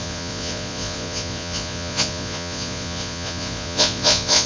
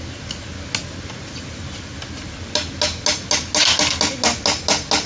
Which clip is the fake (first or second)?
first